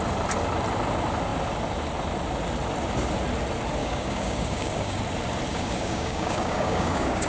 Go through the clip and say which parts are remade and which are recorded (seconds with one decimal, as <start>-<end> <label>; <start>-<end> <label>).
0.0-3.8 recorded; 3.8-5.0 remade; 5.0-5.5 recorded; 5.5-7.3 remade